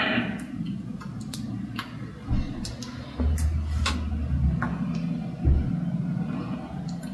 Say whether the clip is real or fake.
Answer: real